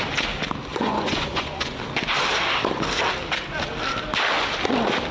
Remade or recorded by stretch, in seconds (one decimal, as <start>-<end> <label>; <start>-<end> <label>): 0.0-0.7 recorded; 0.7-1.8 remade; 1.8-5.1 recorded